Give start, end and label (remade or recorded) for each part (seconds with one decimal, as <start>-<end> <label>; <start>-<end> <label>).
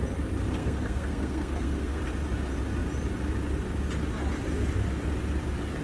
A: 0.0-0.6 recorded; 0.6-2.0 remade; 2.0-5.8 recorded